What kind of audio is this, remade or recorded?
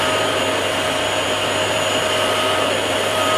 recorded